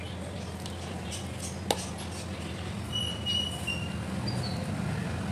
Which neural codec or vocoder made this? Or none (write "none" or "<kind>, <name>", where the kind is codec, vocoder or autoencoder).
none